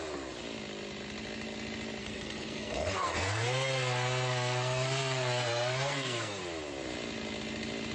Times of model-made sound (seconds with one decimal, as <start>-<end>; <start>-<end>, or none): 2.0-6.4